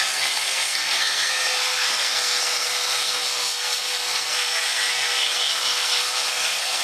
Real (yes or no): no